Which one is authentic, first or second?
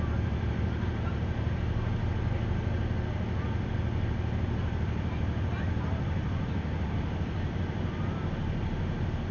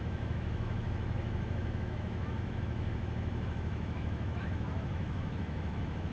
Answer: first